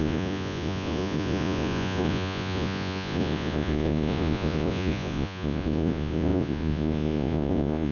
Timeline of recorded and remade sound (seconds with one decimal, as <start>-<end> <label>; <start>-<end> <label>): 0.0-7.9 remade